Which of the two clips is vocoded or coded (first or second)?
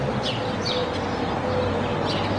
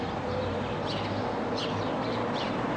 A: second